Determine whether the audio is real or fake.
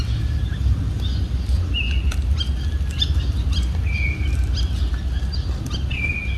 real